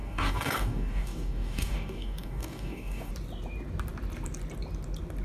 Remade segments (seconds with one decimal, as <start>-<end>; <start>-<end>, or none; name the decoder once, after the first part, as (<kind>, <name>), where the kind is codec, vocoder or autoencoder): 0.0-3.1 (codec, DAC)